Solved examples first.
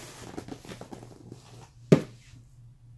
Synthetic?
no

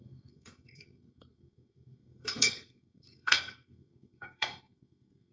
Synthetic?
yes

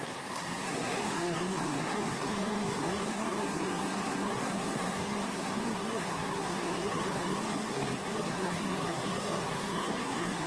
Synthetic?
yes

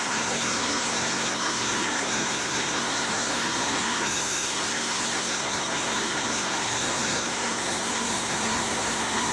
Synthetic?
yes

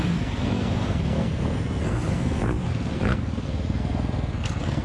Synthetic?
yes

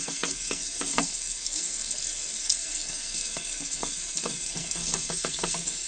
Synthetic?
yes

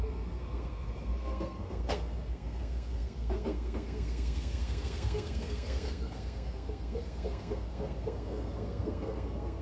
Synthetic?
yes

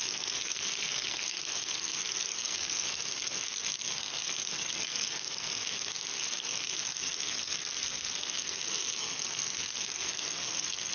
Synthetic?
yes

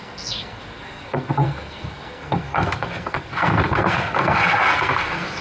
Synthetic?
yes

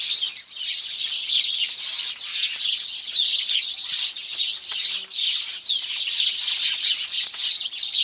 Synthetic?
no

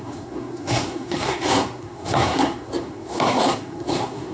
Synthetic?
yes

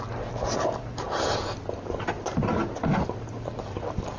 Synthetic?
no